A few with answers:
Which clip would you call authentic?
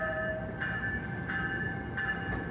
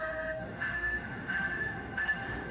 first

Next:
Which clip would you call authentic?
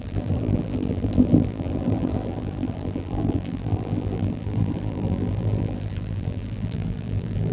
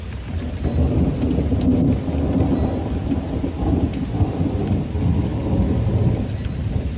second